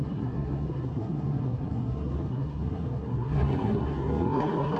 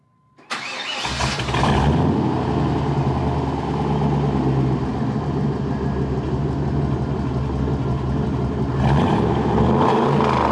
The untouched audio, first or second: second